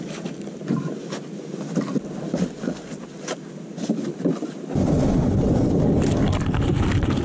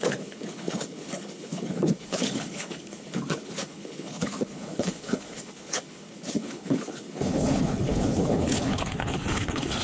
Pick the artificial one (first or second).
second